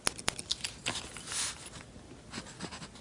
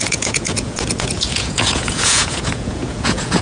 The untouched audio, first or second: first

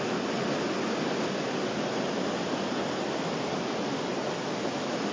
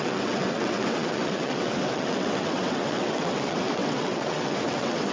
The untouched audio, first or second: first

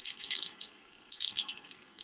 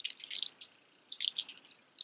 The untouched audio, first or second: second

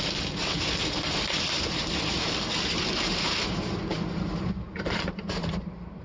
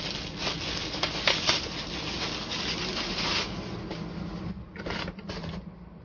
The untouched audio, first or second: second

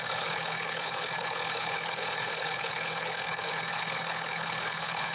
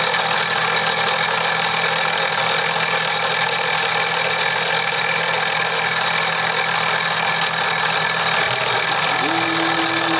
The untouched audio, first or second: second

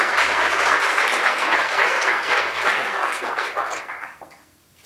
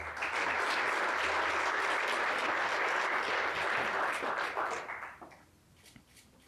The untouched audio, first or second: second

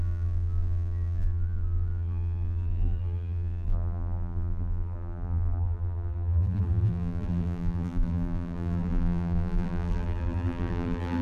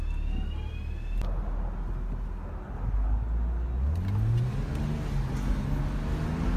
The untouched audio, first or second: second